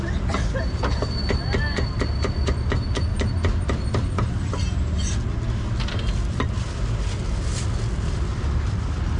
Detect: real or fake real